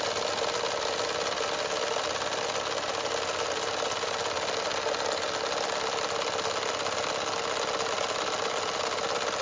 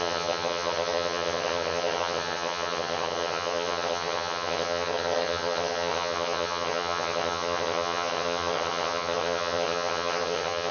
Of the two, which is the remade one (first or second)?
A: second